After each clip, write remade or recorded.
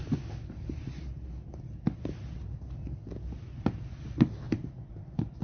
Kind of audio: recorded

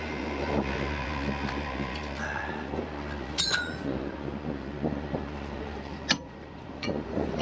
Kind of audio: remade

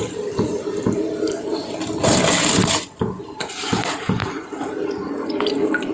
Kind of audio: recorded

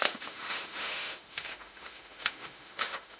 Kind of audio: remade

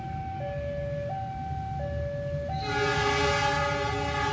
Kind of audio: recorded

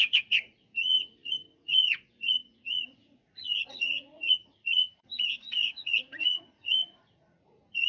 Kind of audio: remade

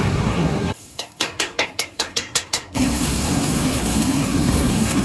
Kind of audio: remade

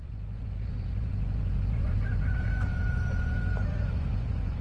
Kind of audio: remade